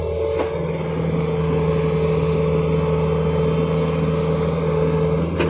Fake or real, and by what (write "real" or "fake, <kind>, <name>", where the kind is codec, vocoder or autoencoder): real